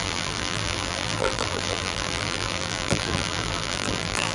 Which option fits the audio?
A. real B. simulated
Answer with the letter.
B